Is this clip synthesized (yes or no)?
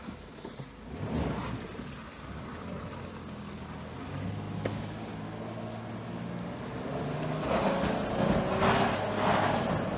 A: no